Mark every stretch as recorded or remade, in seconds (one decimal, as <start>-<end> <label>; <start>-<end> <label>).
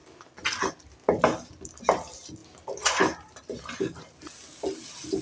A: 0.0-5.2 recorded